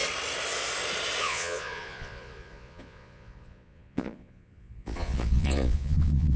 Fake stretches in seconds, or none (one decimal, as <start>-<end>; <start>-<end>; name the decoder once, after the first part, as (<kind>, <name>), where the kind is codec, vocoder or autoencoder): 1.2-6.4 (vocoder, Vocos)